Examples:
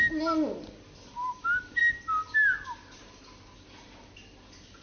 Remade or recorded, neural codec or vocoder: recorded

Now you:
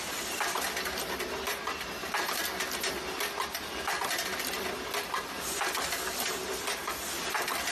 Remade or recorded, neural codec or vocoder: recorded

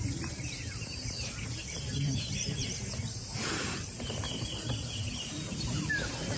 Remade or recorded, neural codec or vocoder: remade, vocoder, BigVGAN v2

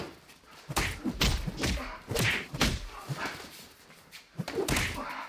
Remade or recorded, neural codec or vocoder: recorded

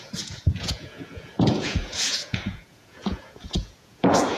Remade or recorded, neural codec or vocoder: remade, vocoder, Vocos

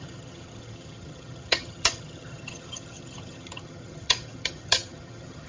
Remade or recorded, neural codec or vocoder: remade, vocoder, HiFi-GAN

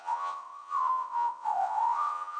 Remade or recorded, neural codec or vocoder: remade, vocoder, WaveNeXt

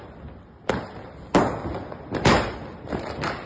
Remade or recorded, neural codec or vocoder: recorded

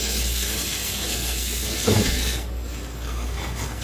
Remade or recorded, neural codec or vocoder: remade, codec, SNAC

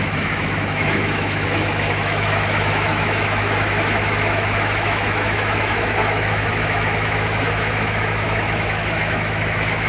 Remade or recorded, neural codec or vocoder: remade, autoencoder, DAC-VAE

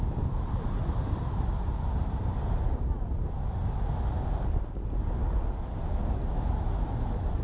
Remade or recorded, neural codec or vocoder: recorded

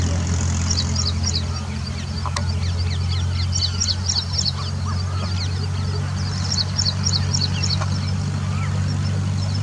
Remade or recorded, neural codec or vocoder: recorded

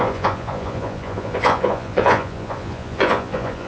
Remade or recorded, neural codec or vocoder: remade, vocoder, Vocos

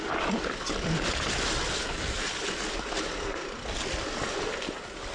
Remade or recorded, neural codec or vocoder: recorded